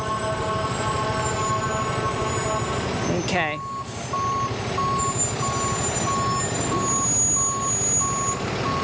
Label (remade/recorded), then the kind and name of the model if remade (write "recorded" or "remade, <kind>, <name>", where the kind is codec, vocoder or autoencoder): recorded